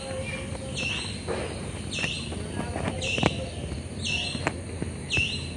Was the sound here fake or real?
real